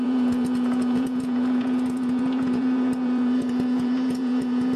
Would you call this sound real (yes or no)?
no